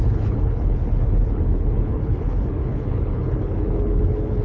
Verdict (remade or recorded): remade